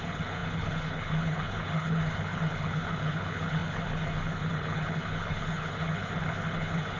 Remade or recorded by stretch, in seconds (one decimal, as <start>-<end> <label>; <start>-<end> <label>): 0.0-7.0 remade